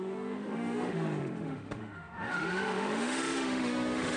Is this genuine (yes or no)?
no